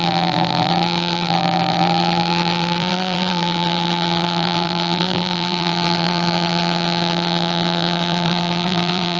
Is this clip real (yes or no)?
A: no